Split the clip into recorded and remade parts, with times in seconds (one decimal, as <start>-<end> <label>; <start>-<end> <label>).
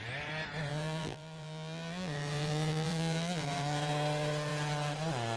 0.0-0.7 recorded; 0.7-3.9 remade; 3.9-5.4 recorded